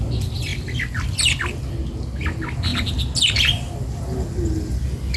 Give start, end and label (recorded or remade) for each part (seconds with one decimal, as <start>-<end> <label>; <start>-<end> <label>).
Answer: 0.0-5.2 recorded